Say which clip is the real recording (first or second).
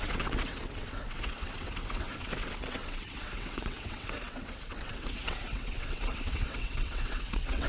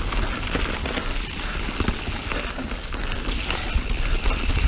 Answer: second